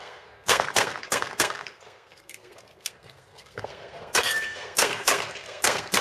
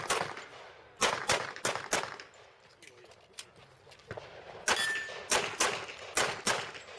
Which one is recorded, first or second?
second